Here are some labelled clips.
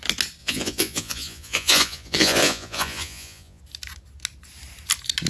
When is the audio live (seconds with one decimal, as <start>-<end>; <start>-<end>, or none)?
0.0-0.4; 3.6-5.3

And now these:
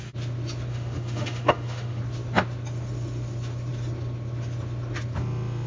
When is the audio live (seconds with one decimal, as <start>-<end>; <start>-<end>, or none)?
0.0-0.7; 2.0-5.7

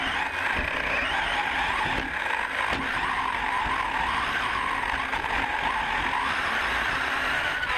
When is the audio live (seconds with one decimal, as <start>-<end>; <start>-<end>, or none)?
0.0-7.8

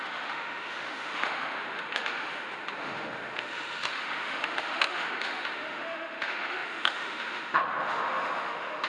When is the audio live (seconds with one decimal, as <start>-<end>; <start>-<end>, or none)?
none

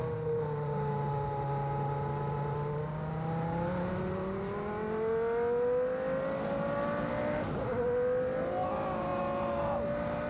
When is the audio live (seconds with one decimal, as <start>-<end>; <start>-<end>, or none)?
0.0-10.3